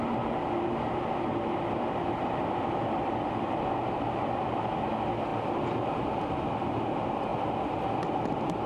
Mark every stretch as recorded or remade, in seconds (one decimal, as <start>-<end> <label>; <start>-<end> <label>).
0.0-4.6 remade; 4.6-5.3 recorded; 5.3-5.9 remade; 5.9-8.7 recorded